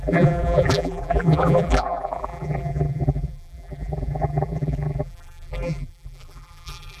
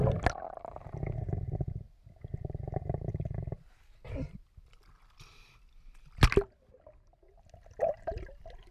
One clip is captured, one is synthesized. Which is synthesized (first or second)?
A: first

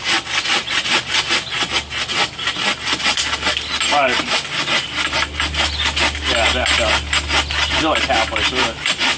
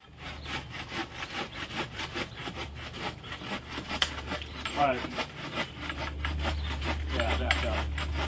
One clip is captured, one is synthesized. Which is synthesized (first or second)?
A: second